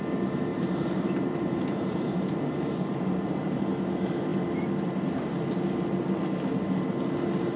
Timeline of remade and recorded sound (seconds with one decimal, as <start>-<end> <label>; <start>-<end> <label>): 0.0-0.5 recorded; 0.5-3.7 remade; 3.7-7.6 recorded